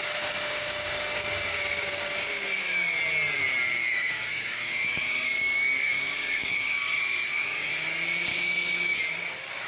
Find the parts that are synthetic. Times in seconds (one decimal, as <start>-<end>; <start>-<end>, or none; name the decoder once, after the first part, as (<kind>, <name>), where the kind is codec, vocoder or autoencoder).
0.0-3.0 (codec, DAC); 3.8-7.7; 8.3-9.0